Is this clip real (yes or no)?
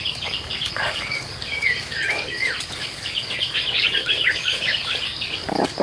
no